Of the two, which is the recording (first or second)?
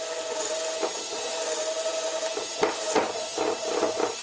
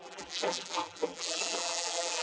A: first